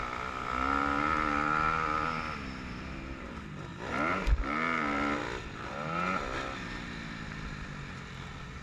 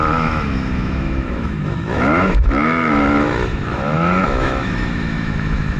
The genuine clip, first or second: first